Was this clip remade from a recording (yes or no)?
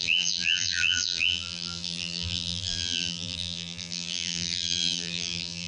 yes